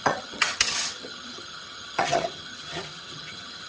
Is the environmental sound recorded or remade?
remade